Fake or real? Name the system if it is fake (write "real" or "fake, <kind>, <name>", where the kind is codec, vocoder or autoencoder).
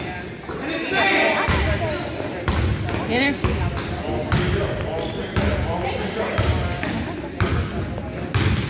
real